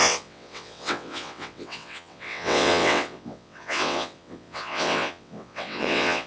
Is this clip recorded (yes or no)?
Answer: no